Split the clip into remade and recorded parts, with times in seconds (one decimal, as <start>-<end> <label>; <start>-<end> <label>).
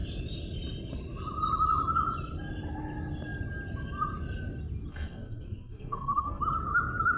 0.0-4.9 recorded; 4.9-6.4 remade; 6.4-7.2 recorded